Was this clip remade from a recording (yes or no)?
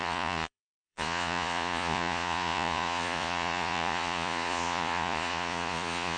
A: yes